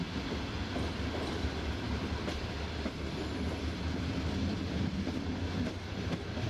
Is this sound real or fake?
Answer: real